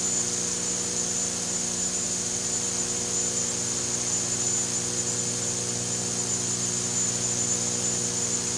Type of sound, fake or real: real